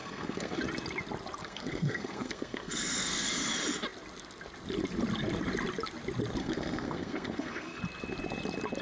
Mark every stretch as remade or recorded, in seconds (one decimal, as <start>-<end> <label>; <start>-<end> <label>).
0.0-0.6 remade; 0.6-1.4 recorded; 1.4-3.3 remade; 3.3-6.4 recorded; 6.4-7.8 remade; 7.8-8.8 recorded